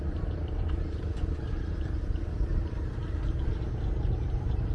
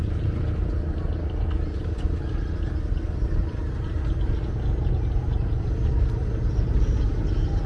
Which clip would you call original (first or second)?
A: second